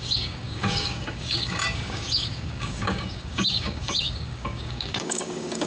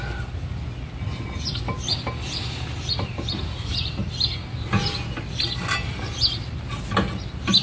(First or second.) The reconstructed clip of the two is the first